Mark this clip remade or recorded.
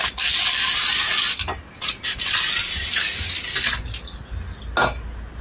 recorded